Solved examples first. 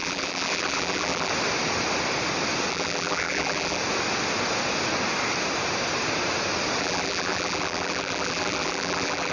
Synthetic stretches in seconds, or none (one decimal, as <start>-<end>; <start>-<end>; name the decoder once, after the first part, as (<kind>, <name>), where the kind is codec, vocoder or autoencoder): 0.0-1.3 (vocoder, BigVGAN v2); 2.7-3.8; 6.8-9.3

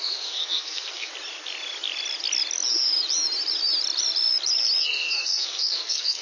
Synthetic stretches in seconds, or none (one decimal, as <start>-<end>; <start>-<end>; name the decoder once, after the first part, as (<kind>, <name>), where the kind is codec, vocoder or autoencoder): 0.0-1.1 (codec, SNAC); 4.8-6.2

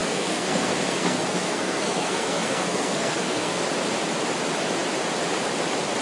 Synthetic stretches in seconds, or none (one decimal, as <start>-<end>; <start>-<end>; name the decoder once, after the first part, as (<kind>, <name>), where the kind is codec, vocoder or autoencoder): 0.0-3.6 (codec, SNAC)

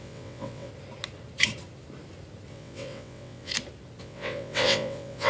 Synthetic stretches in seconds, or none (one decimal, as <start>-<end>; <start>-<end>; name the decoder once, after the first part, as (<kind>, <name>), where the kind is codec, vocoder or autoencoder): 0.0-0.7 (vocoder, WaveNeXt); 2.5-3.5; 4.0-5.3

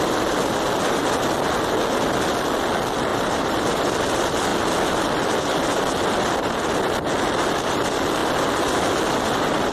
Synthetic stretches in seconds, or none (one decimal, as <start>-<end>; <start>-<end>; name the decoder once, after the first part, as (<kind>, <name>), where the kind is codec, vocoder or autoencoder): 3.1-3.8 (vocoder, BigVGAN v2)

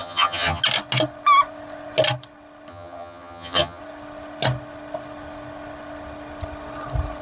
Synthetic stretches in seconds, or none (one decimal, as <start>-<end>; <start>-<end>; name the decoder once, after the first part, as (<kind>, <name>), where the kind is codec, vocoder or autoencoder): 0.0-0.6 (vocoder, HiFi-GAN); 2.7-3.8

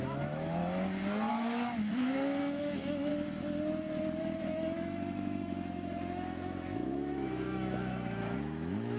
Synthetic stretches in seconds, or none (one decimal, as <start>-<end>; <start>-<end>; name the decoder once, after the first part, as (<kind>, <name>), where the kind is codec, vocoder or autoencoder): 0.0-0.6 (autoencoder, DAC-VAE); 1.3-3.1; 4.2-9.0

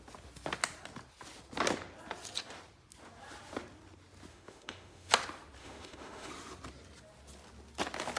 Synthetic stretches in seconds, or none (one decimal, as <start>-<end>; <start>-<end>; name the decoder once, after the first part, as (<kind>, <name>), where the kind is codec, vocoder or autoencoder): 4.3-5.1 (autoencoder, DAC-VAE); 5.6-6.3